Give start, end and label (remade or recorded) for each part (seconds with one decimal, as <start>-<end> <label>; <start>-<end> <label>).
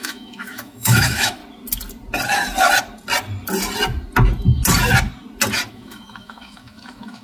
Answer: 0.0-1.4 remade; 1.4-5.7 recorded; 5.7-7.2 remade